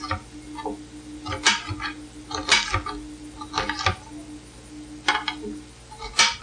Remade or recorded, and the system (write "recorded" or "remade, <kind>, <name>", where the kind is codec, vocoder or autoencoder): recorded